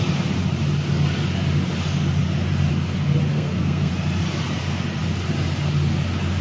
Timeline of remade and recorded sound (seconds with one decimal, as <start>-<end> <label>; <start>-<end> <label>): 0.0-3.3 recorded; 3.3-3.9 remade; 3.9-6.4 recorded

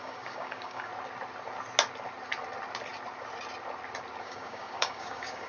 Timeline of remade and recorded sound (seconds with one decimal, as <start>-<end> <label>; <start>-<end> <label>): 0.0-0.9 remade; 0.9-4.2 recorded; 4.2-5.5 remade

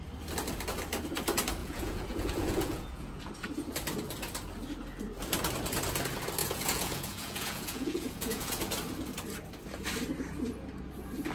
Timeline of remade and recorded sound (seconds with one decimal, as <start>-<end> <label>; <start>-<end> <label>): 0.0-1.6 recorded; 1.6-3.2 remade; 3.2-6.4 recorded; 6.4-8.6 remade; 8.6-11.3 recorded

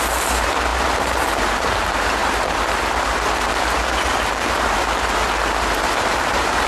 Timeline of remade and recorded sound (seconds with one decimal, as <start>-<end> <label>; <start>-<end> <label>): 0.0-6.7 remade

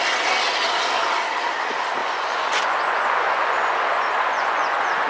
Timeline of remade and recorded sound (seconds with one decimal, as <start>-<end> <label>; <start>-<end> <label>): 0.0-2.0 recorded; 2.0-5.1 remade

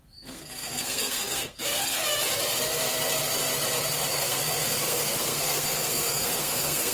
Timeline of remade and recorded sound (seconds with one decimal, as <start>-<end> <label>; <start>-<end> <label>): 0.0-2.0 remade; 2.0-4.1 recorded; 4.1-6.9 remade

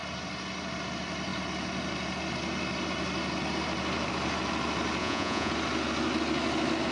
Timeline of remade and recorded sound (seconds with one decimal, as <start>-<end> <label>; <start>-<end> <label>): 0.0-5.0 recorded; 5.0-5.5 remade; 5.5-6.9 recorded